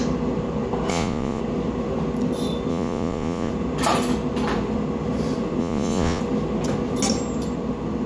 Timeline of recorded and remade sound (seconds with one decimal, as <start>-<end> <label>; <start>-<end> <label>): 0.0-0.9 recorded; 0.9-1.4 remade; 1.4-2.7 recorded; 2.7-3.5 remade; 3.5-5.6 recorded; 5.6-6.2 remade; 6.2-8.1 recorded